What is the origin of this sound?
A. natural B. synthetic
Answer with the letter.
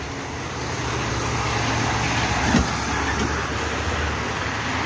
A